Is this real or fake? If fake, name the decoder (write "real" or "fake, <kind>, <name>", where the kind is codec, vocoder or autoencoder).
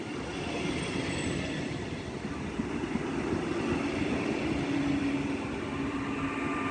real